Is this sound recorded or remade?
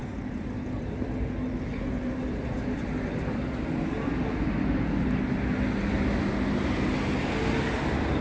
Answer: recorded